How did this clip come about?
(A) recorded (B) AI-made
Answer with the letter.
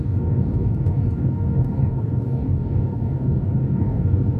B